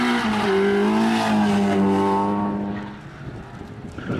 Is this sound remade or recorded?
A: recorded